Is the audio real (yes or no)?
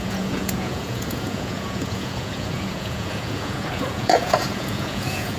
no